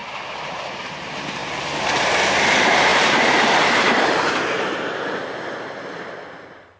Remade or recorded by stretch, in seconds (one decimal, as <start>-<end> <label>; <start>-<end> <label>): 0.0-6.8 recorded